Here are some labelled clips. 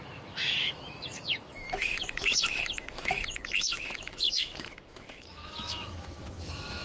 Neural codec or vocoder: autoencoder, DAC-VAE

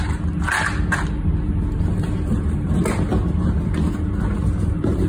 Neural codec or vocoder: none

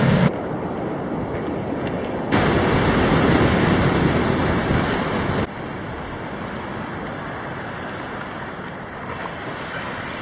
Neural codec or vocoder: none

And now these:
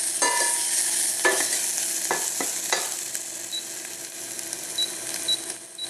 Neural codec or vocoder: none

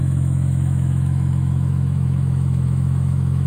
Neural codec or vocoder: autoencoder, DAC-VAE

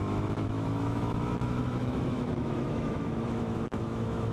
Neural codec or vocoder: autoencoder, DAC-VAE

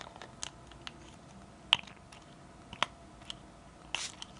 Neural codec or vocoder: none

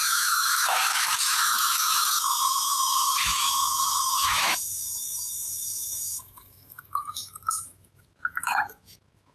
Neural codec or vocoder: autoencoder, DAC-VAE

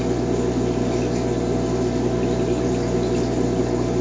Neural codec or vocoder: none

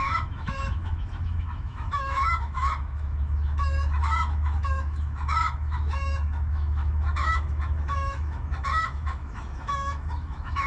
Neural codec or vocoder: autoencoder, DAC-VAE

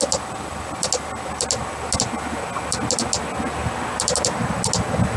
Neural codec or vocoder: none